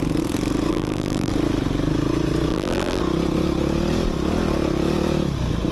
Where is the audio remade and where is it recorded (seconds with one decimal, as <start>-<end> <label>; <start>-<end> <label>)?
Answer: 0.0-0.7 recorded; 0.7-1.3 remade; 1.3-2.5 recorded; 2.5-3.0 remade; 3.0-5.7 recorded